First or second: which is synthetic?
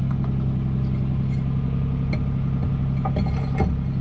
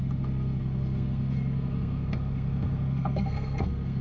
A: second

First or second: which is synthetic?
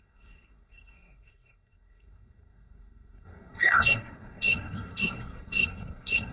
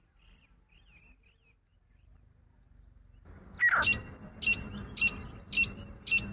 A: first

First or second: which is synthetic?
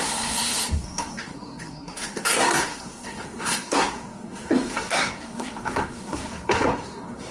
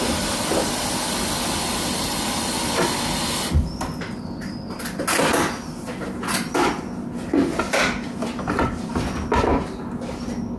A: first